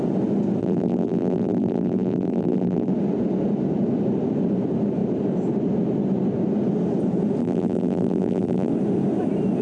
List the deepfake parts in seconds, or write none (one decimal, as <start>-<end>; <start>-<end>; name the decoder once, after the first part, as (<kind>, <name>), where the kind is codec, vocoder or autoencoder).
0.6-2.9 (vocoder, BigVGAN v2); 7.4-8.7